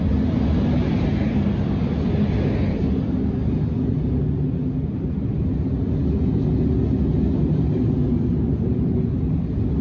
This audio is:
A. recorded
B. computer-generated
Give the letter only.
A